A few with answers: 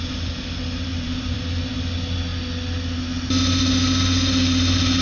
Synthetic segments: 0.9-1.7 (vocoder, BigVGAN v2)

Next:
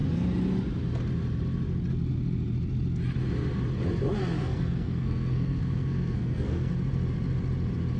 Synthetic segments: 4.4-6.7 (codec, SNAC)

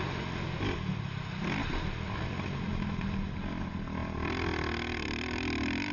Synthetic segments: none

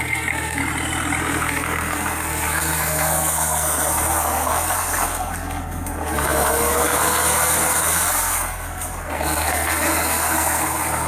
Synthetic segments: 0.0-0.6 (codec, SNAC); 1.2-11.1

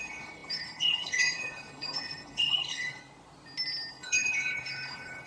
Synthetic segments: 0.0-3.0 (codec, HILCodec); 3.9-5.3

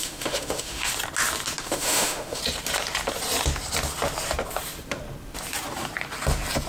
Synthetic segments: 0.0-0.9 (autoencoder, DAC-VAE); 1.6-2.4

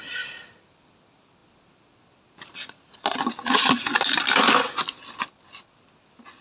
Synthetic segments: none

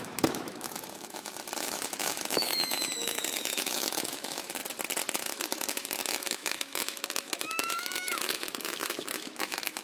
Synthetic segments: 0.0-4.6 (autoencoder, DAC-VAE); 5.1-9.8